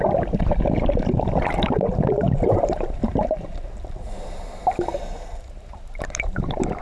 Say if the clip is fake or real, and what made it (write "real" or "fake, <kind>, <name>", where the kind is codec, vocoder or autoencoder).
fake, vocoder, BigVGAN v2